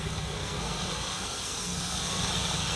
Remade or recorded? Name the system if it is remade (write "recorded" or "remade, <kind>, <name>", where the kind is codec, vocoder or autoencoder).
remade, codec, SNAC